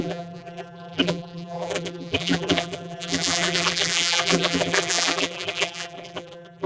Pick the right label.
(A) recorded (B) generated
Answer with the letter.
B